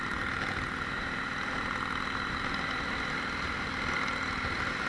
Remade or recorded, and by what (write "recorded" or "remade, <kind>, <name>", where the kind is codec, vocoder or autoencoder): recorded